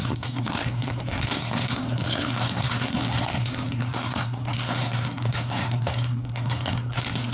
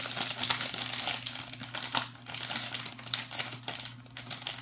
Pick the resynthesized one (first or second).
first